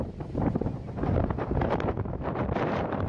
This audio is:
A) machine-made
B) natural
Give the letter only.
A